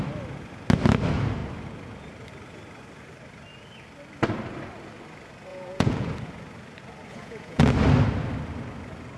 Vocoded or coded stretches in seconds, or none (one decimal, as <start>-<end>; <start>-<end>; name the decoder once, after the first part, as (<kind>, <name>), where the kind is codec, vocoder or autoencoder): 5.5-6.1 (vocoder, Vocos); 7.1-7.6